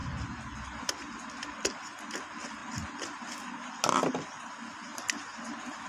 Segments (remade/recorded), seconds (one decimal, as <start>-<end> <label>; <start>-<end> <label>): 0.0-5.9 recorded